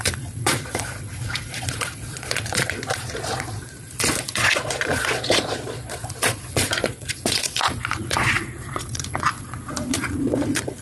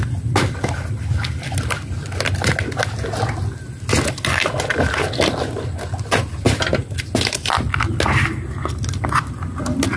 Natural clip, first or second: second